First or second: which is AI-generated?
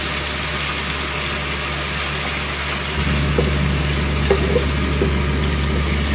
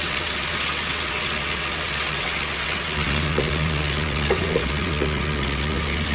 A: second